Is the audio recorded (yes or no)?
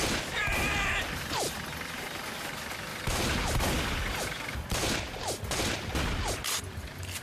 no